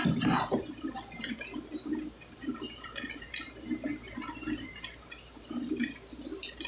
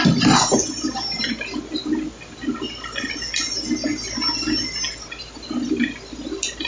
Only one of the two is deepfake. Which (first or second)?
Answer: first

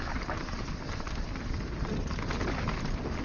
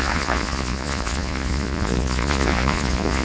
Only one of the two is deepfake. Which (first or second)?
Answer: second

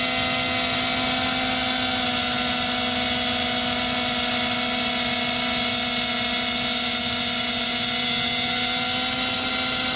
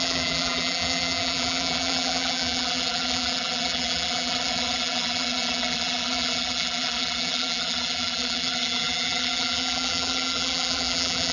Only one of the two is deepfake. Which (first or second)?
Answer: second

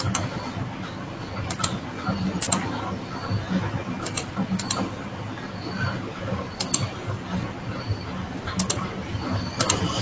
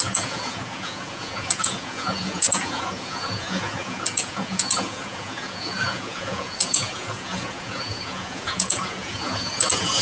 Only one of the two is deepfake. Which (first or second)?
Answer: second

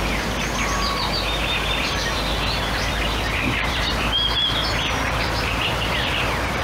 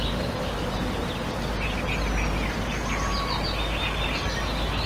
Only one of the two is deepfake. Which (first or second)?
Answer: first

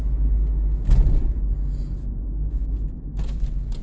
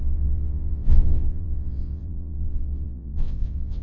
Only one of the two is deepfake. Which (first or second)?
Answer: second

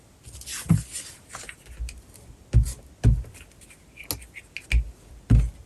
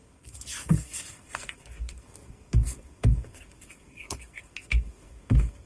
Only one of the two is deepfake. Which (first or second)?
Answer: second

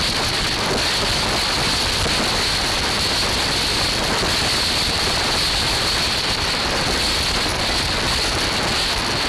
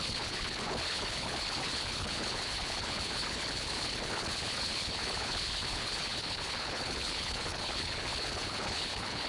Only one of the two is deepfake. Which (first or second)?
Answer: second